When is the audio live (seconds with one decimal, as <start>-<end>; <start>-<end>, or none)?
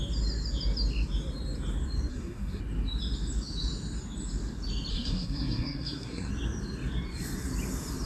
0.0-2.1; 2.6-4.9; 6.3-8.1